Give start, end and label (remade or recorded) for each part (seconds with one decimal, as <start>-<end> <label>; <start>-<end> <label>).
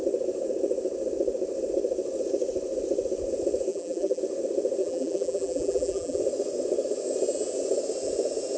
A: 0.0-3.7 recorded; 3.7-4.2 remade; 4.2-4.8 recorded; 4.8-6.2 remade; 6.2-8.6 recorded